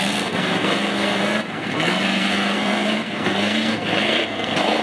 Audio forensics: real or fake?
fake